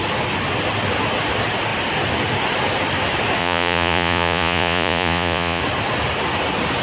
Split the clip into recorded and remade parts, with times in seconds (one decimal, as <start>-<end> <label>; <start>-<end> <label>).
0.0-3.4 recorded; 3.4-5.6 remade; 5.6-6.8 recorded